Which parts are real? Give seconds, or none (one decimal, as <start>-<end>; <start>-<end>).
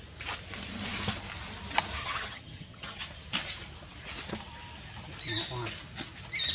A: 0.0-2.0; 3.0-6.5